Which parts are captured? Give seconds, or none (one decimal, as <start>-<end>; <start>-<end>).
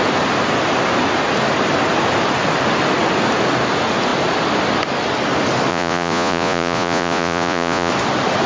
0.0-5.7; 7.9-8.5